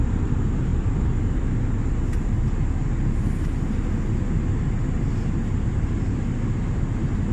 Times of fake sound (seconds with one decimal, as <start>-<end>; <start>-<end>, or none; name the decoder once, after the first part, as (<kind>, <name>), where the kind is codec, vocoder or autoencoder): none